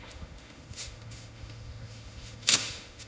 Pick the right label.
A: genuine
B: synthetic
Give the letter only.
B